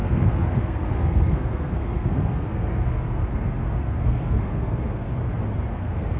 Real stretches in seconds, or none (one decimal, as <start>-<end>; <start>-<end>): 5.2-5.7